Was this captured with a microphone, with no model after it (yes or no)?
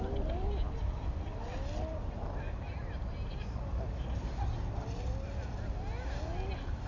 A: yes